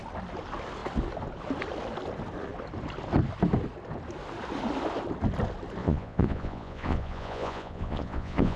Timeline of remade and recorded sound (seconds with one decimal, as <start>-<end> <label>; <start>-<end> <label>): 0.0-5.8 recorded; 5.8-8.6 remade